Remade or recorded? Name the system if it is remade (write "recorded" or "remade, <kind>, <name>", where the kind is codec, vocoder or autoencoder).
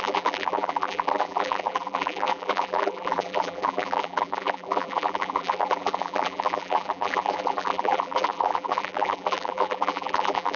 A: remade, vocoder, BigVGAN v2